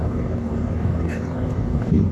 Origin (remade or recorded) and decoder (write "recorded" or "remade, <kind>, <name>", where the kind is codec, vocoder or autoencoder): remade, codec, DAC